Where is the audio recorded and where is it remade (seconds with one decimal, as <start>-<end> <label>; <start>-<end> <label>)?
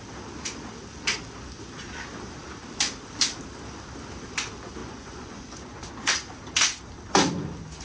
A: 0.0-4.8 recorded; 4.8-5.9 remade; 5.9-7.8 recorded